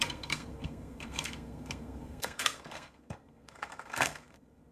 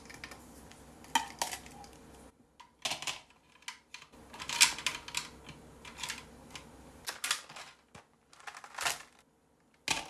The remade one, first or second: first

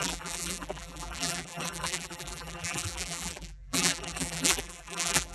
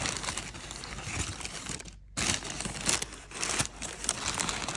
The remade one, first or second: first